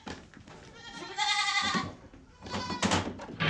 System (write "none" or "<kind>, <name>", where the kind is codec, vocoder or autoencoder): none